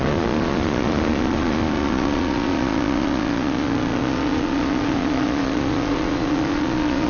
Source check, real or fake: fake